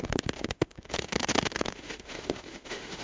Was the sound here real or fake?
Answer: fake